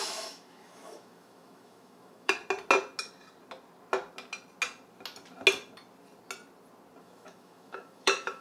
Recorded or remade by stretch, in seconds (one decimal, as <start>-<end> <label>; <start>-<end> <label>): 0.0-2.4 remade; 2.4-7.0 recorded; 7.0-8.4 remade